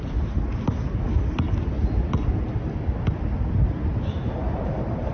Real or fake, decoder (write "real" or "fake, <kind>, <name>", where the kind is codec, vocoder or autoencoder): real